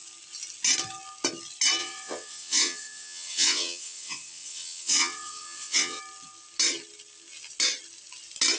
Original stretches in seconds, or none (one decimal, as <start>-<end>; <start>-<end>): 0.0-1.8; 6.0-8.6